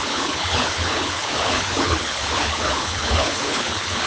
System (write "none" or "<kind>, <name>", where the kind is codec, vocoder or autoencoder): codec, HILCodec